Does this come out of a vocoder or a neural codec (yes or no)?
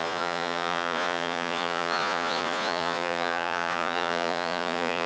yes